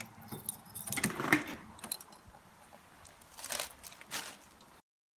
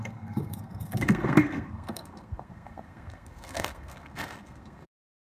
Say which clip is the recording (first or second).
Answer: first